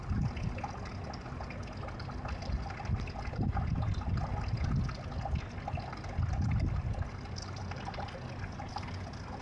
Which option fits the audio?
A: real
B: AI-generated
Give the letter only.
A